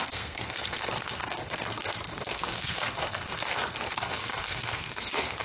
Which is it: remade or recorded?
remade